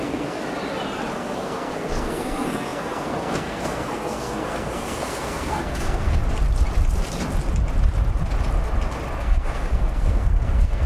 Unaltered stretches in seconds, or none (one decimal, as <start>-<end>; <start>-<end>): 0.4-1.1; 6.2-9.2